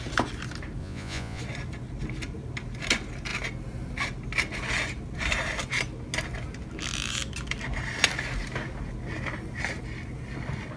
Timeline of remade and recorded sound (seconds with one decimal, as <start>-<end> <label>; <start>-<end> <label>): 0.0-0.8 recorded; 0.8-1.4 remade; 1.4-10.8 recorded